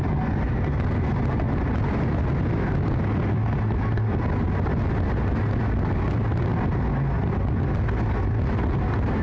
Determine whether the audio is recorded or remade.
recorded